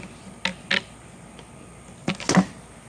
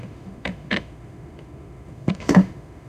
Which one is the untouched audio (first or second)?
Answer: first